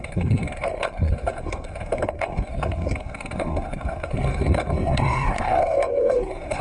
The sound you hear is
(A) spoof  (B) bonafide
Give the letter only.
A